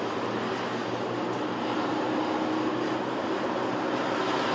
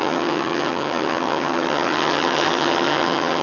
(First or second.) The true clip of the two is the first